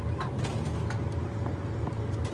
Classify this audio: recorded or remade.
recorded